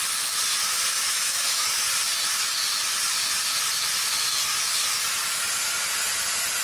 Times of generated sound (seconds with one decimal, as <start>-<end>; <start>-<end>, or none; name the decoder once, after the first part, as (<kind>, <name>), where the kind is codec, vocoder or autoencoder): 0.9-1.9 (autoencoder, DAC-VAE)

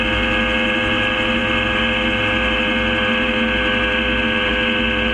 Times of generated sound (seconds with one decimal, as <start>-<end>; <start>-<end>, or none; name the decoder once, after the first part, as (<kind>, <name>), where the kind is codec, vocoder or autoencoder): none

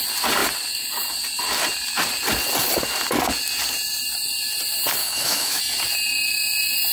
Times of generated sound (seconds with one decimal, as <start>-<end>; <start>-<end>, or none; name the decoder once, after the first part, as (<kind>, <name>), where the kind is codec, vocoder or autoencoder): 5.0-5.6 (autoencoder, DAC-VAE)

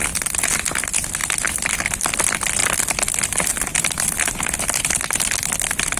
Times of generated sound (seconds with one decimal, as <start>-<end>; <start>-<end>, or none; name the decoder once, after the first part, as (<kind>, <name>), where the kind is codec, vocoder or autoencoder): none

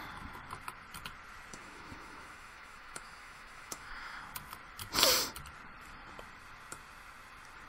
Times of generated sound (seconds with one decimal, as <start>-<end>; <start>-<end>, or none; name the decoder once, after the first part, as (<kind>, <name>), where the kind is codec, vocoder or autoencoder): 1.5-4.2 (autoencoder, DAC-VAE)